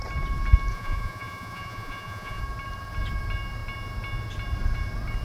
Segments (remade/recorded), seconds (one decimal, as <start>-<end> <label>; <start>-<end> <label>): 0.0-0.7 recorded; 0.7-2.4 remade; 2.4-5.2 recorded

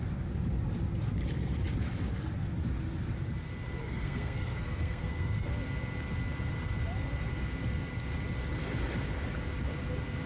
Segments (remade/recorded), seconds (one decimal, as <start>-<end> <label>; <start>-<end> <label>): 0.0-3.8 recorded; 3.8-5.5 remade; 5.5-10.3 recorded

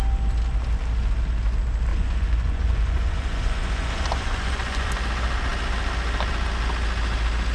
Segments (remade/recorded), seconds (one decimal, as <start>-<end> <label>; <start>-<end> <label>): 0.0-1.9 recorded; 1.9-4.9 remade; 4.9-7.5 recorded

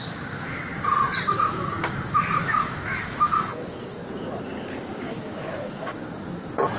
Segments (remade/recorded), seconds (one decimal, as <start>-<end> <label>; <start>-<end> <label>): 0.0-0.7 remade; 0.7-1.3 recorded; 1.3-4.0 remade; 4.0-5.0 recorded; 5.0-5.9 remade; 5.9-6.8 recorded

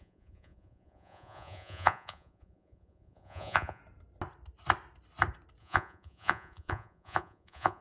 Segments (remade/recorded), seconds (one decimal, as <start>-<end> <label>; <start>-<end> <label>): 0.0-3.8 remade; 3.8-5.6 recorded; 5.6-7.8 remade